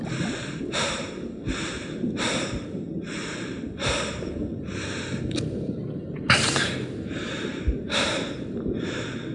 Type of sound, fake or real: fake